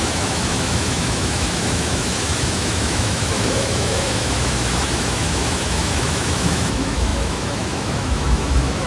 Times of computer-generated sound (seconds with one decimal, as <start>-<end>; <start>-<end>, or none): 0.0-8.9